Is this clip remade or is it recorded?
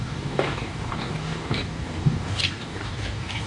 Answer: remade